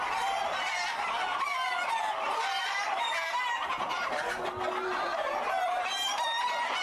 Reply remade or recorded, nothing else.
recorded